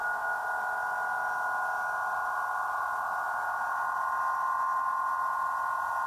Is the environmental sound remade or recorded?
recorded